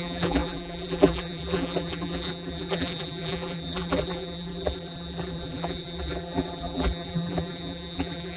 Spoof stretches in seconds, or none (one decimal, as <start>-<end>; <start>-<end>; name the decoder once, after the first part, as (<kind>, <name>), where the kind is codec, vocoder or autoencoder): 0.0-8.4 (vocoder, BigVGAN v2)